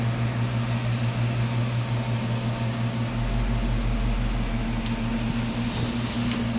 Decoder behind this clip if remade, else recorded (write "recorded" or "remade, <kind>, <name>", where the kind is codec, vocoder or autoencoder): recorded